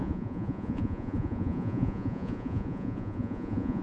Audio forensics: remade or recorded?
remade